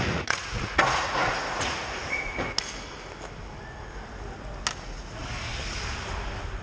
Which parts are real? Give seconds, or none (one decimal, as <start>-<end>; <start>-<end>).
2.0-4.8; 5.2-6.6